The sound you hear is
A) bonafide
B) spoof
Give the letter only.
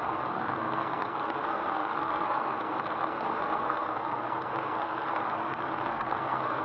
B